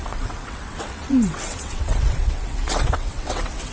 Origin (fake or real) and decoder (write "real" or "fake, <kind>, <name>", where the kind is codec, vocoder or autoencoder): fake, vocoder, WaveNeXt